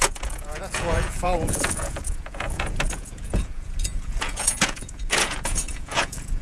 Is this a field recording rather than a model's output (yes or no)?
no